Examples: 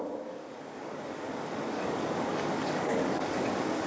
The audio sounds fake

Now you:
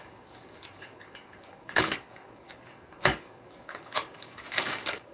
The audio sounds fake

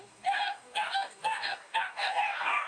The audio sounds fake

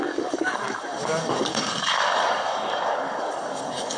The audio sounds fake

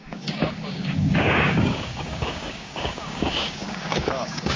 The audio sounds fake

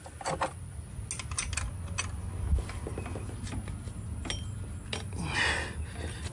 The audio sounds real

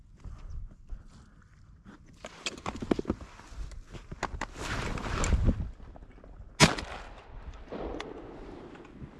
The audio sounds real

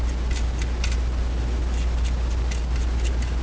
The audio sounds real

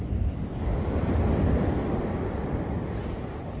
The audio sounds real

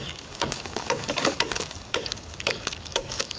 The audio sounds fake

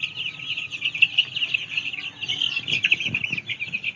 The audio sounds real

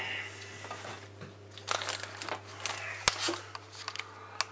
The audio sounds real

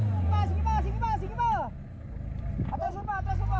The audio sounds real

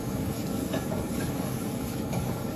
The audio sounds fake